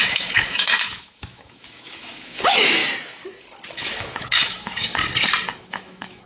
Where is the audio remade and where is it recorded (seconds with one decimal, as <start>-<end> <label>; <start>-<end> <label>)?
0.0-2.8 remade; 2.8-3.7 recorded; 3.7-4.9 remade; 4.9-5.5 recorded; 5.5-6.3 remade